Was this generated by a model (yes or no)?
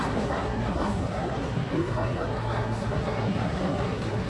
yes